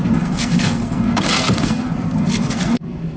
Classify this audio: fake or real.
fake